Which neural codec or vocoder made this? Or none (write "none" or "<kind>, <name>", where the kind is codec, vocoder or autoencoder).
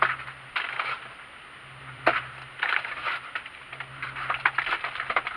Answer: none